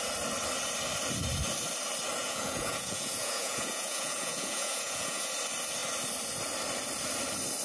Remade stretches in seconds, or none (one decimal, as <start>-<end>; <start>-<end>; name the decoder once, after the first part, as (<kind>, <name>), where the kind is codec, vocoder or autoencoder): 2.2-5.3 (vocoder, Vocos)